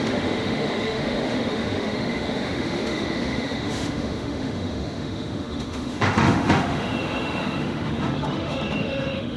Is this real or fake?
fake